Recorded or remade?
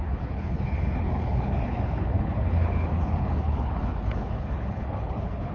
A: remade